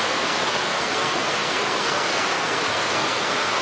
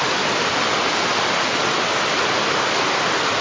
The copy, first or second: first